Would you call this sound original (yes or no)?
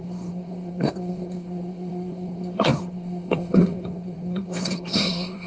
no